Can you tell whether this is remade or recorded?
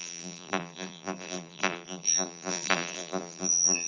remade